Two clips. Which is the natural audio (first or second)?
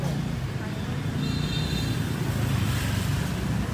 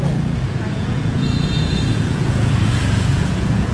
first